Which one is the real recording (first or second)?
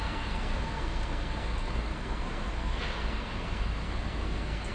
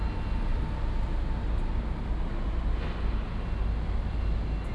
second